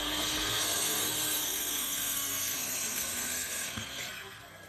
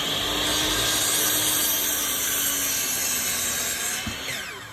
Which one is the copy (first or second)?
first